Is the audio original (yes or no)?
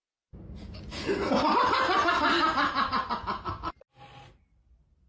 yes